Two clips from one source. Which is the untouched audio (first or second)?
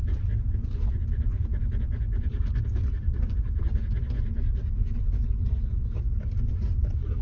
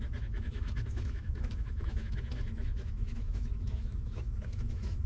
first